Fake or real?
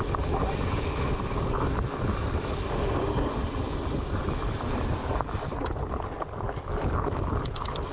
real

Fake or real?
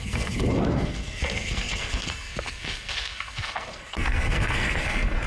fake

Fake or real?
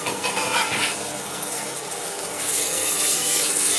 fake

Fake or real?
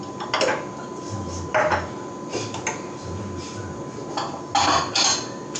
real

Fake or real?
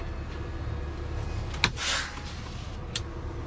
real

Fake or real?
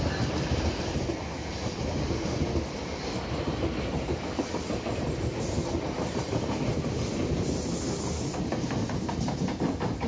real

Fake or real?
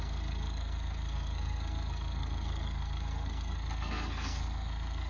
fake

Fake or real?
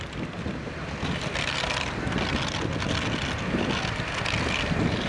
real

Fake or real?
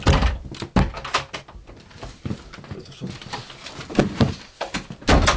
real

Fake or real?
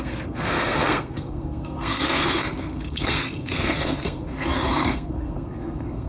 fake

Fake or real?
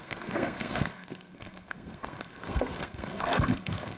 fake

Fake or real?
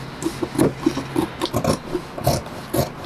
real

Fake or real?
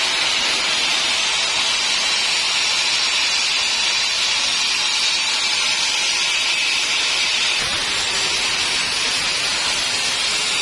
real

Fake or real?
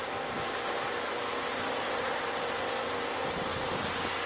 real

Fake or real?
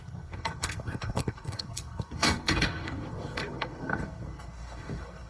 fake